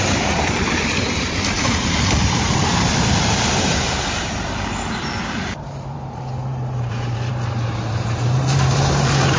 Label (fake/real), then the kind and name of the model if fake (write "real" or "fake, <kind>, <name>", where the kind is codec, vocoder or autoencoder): fake, vocoder, BigVGAN v2